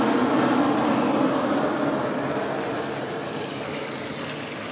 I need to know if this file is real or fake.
real